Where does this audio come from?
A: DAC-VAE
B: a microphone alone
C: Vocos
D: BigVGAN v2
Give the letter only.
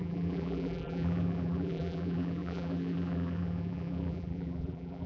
D